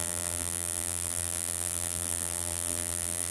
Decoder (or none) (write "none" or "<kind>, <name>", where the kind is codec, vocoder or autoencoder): vocoder, BigVGAN v2